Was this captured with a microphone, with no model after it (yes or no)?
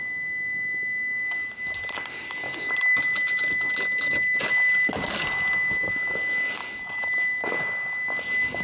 yes